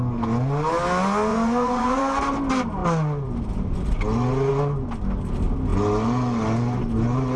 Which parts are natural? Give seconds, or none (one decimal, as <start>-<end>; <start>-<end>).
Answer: 0.0-1.3; 2.0-7.4